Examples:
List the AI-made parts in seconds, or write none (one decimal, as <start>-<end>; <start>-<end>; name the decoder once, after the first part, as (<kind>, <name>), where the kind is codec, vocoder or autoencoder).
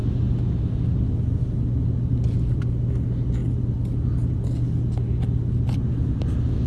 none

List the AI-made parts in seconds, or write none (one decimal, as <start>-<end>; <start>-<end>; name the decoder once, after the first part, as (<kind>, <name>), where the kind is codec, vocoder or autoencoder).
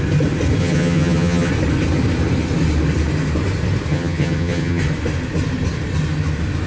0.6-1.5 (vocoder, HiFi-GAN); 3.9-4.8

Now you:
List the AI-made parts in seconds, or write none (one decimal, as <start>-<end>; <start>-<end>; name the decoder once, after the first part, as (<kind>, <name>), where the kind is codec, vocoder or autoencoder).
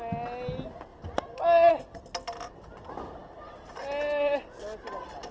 none